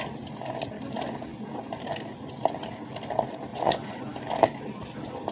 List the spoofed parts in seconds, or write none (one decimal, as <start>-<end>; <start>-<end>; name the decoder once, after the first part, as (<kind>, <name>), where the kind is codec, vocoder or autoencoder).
3.5-4.2 (vocoder, Vocos)